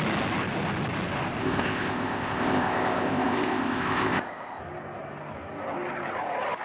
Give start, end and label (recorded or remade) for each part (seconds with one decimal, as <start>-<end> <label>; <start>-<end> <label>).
0.0-1.4 recorded; 1.4-4.6 remade; 4.6-6.6 recorded